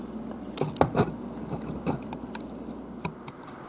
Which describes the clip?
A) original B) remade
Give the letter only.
A